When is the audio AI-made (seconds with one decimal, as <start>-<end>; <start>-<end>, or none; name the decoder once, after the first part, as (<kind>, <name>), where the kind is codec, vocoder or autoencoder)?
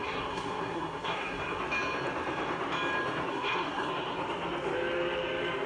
0.0-1.6 (codec, SNAC); 3.3-3.9